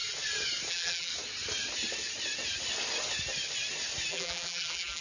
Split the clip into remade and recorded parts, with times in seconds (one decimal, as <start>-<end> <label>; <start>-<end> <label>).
0.0-0.7 recorded; 0.7-1.1 remade; 1.1-4.1 recorded; 4.1-5.0 remade